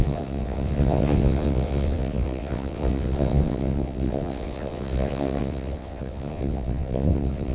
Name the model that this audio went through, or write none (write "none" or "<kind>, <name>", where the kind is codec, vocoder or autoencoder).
vocoder, WaveNeXt